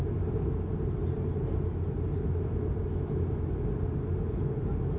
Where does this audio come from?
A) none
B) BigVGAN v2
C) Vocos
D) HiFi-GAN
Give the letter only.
A